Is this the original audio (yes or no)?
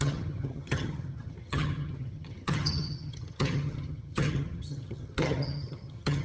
no